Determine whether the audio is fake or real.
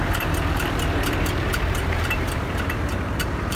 fake